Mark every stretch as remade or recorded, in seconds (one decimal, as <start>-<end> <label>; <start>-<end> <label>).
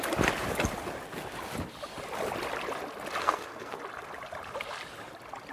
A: 0.0-3.2 recorded; 3.2-3.8 remade; 3.8-5.5 recorded